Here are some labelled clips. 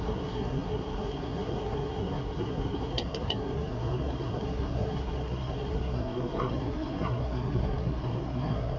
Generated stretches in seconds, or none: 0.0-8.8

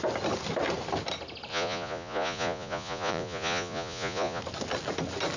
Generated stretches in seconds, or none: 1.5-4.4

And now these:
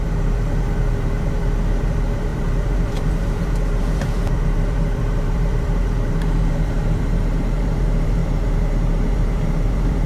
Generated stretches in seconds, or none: 0.0-10.1

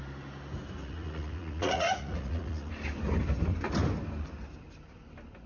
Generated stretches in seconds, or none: 0.8-2.7

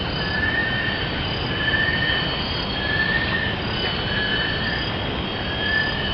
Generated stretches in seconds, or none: 0.6-1.4

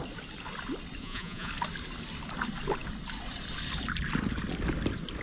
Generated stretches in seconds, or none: 1.0-1.5

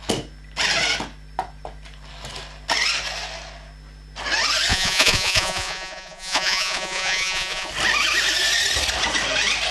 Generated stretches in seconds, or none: 4.7-7.7